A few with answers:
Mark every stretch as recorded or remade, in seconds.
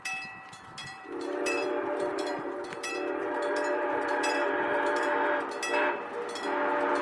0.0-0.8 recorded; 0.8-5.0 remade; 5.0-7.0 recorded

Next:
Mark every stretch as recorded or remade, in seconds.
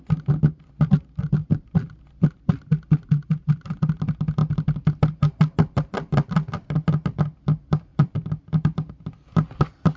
0.0-4.4 recorded; 4.4-5.0 remade; 5.0-7.9 recorded; 7.9-8.9 remade; 8.9-10.0 recorded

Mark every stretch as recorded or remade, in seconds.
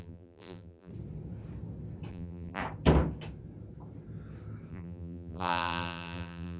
0.0-0.9 remade; 0.9-2.1 recorded; 2.1-2.6 remade; 2.6-4.7 recorded; 4.7-6.6 remade